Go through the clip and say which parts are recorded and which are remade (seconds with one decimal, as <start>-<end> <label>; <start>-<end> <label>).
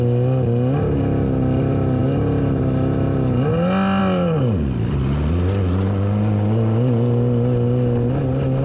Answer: 0.0-4.0 recorded; 4.0-5.0 remade; 5.0-8.6 recorded